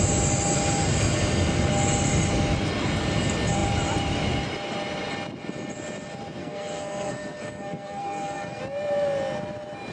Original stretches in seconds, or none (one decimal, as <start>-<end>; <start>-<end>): 0.0-6.4; 8.6-9.9